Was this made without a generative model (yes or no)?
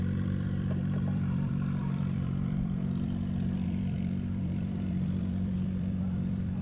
no